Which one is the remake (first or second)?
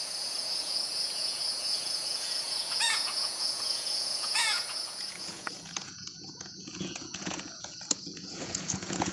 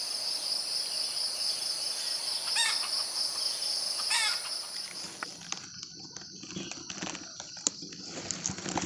first